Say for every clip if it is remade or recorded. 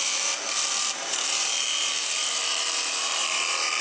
remade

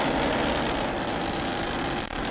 remade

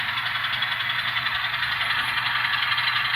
recorded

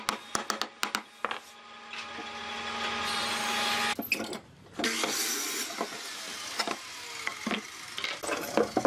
recorded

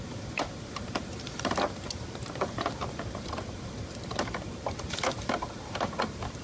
remade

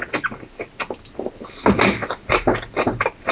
recorded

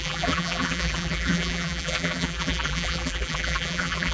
remade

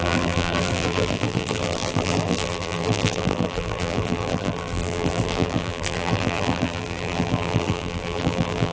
remade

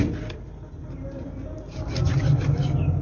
remade